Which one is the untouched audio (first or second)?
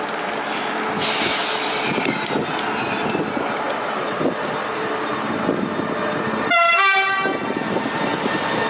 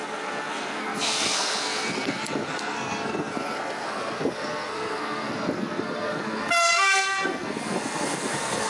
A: first